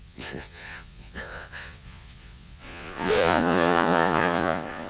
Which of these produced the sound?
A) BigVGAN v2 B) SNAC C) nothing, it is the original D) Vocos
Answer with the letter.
D